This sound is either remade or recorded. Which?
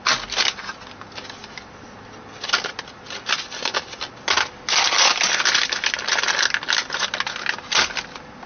recorded